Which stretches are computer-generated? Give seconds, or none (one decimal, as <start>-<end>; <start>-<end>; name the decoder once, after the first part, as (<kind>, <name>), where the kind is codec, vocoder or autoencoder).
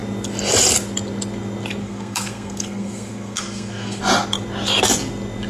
1.8-4.0 (codec, SNAC)